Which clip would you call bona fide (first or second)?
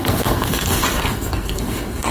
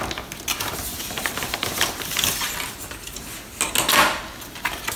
second